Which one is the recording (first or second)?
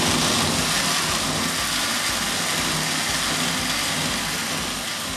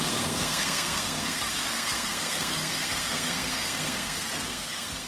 first